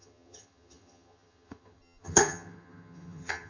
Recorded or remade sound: remade